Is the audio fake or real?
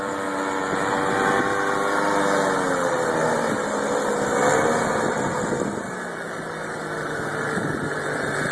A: real